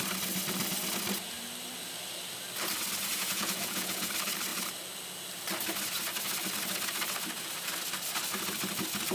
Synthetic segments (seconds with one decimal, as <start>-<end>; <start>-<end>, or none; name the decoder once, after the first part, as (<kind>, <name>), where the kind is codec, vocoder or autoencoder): 3.1-4.1 (vocoder, Vocos)